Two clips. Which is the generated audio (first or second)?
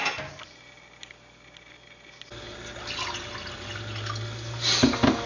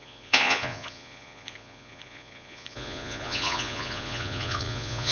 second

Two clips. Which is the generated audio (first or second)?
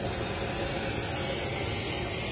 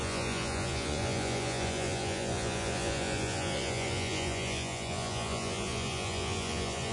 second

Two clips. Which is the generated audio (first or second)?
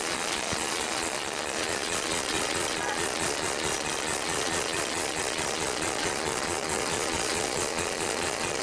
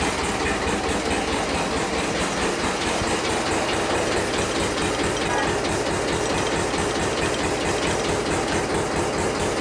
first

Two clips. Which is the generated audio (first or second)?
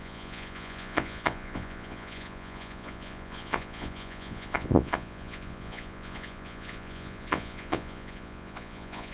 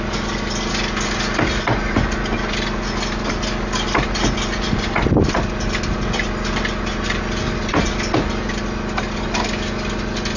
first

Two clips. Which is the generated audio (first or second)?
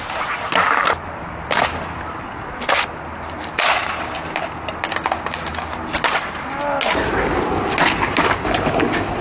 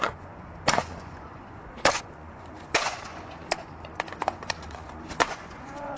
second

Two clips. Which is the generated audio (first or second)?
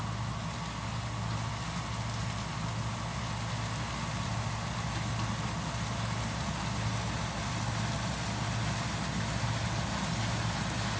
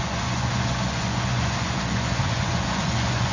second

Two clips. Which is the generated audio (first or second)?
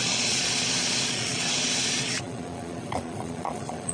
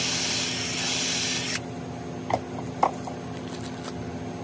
first